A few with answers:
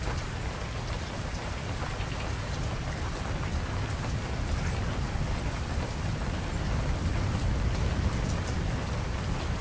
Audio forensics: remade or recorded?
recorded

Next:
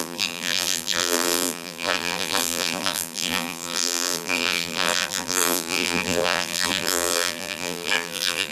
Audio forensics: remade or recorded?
remade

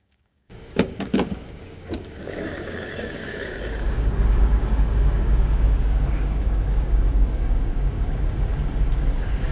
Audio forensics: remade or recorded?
remade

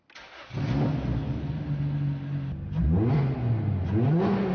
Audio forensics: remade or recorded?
recorded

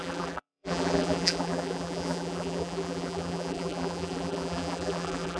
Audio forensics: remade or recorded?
remade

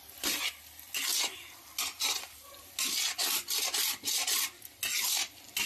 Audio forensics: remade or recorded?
recorded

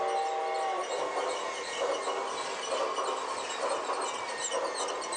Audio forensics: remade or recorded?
recorded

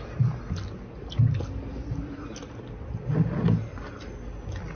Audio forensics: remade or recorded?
recorded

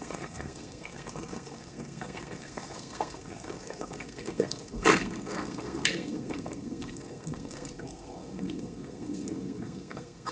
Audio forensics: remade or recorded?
remade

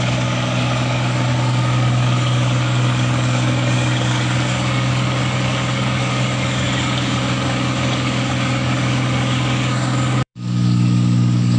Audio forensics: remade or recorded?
remade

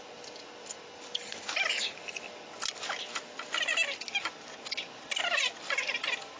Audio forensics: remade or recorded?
recorded